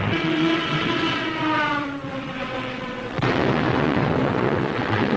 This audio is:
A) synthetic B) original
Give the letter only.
A